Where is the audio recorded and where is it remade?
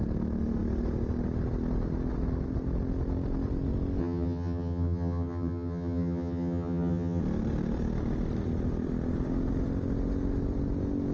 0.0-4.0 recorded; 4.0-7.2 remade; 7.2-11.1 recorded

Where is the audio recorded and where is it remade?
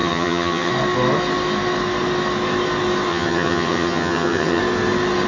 0.0-0.7 remade; 0.7-3.1 recorded; 3.1-4.6 remade; 4.6-5.3 recorded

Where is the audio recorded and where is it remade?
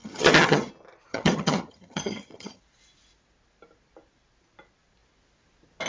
0.0-0.7 remade; 0.7-1.1 recorded; 1.1-2.6 remade; 2.6-5.9 recorded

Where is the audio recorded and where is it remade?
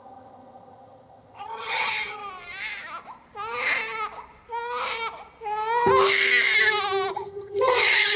0.0-2.2 remade; 2.2-7.1 recorded; 7.1-8.2 remade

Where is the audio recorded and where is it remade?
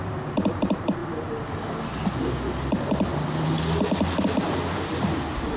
0.0-5.6 recorded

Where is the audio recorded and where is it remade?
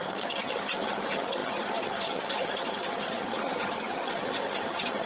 0.0-5.1 remade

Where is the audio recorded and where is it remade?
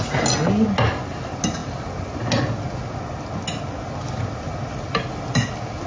0.0-5.9 recorded